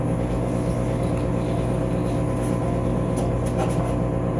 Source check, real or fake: real